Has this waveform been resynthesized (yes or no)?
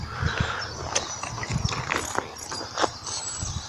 no